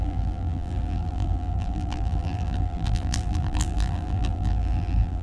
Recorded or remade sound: remade